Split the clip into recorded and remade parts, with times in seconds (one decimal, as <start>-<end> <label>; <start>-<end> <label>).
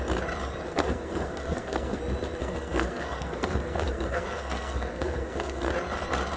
0.0-0.7 recorded; 0.7-2.0 remade; 2.0-2.4 recorded; 2.4-5.7 remade; 5.7-6.4 recorded